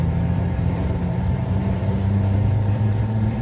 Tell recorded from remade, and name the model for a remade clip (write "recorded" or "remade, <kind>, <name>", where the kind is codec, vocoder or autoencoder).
remade, vocoder, BigVGAN v2